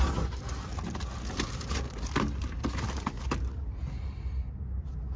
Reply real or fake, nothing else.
real